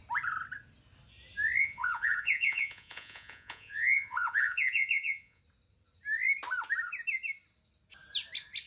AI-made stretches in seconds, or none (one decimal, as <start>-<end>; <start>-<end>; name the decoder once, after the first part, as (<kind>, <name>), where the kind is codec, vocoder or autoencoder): 1.6-5.4 (vocoder, Vocos)